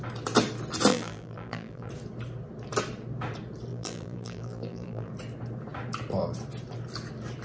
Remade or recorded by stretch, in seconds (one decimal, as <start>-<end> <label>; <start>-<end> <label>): 0.0-0.9 recorded; 0.9-1.9 remade; 1.9-3.7 recorded; 3.7-5.1 remade; 5.1-7.4 recorded